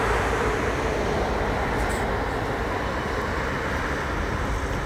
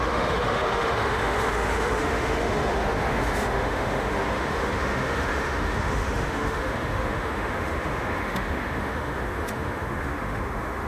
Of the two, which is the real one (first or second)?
first